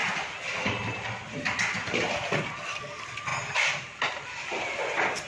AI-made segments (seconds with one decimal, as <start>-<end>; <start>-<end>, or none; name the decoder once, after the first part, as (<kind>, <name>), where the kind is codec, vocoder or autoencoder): none